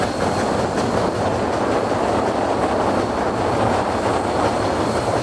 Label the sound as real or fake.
real